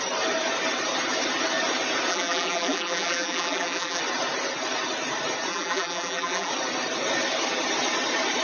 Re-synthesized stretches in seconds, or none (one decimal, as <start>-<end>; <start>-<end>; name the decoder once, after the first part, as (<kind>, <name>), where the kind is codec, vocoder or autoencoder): 2.1-4.0 (vocoder, BigVGAN v2); 5.5-6.5